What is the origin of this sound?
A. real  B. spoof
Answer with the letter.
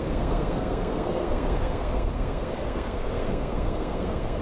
B